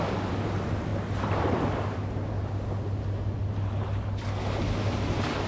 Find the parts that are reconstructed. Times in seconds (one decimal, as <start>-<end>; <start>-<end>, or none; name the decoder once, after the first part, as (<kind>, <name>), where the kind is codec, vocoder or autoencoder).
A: none